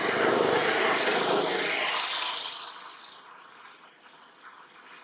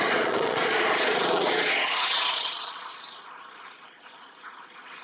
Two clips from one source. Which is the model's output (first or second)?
second